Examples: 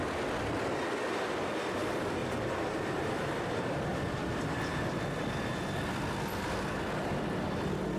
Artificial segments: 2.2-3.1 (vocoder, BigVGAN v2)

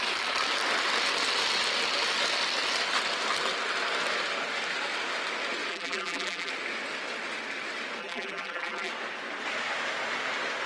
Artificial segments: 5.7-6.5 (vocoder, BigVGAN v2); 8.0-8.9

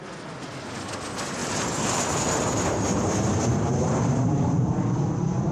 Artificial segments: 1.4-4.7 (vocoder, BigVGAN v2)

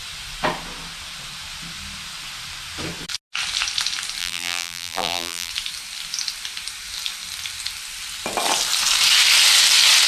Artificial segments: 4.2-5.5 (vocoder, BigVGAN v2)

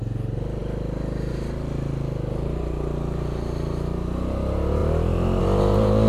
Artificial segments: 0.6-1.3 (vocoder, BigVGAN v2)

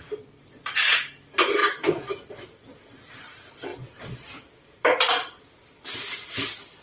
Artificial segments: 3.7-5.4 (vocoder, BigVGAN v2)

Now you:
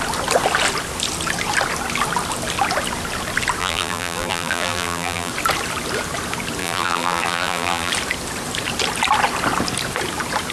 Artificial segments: 3.6-5.3 (vocoder, BigVGAN v2); 6.6-7.9

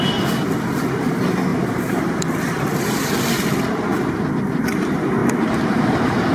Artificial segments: 1.5-3.2 (vocoder, BigVGAN v2); 5.2-6.3